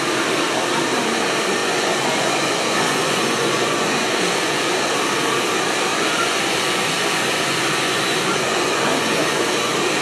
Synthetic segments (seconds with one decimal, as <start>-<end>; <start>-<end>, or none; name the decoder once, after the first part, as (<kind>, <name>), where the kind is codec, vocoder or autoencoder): 1.6-4.8 (vocoder, Vocos); 5.9-9.5